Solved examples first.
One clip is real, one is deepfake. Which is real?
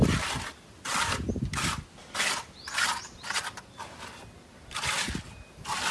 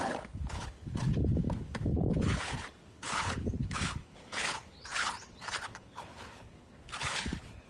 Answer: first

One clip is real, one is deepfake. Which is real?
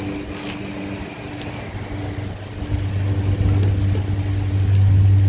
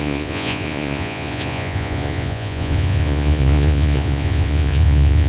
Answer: first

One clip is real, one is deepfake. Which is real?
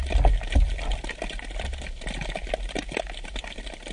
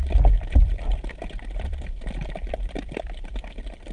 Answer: first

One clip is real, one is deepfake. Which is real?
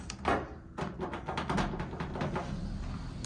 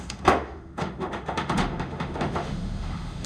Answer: first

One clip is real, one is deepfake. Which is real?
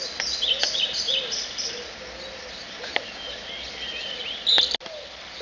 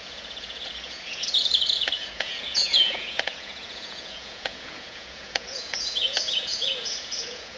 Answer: first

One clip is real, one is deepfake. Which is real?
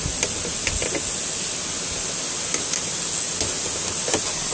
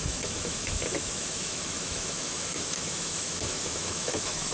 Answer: first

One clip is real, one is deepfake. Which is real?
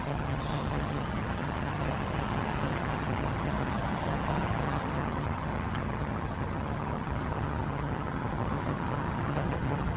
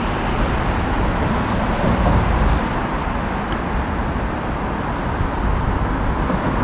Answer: second